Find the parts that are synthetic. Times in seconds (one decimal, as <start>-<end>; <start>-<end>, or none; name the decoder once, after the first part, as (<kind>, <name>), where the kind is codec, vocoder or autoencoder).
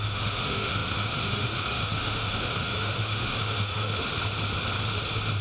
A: 0.0-4.1 (autoencoder, DAC-VAE)